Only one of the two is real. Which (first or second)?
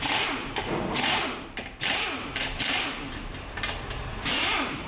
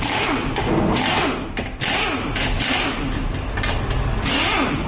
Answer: second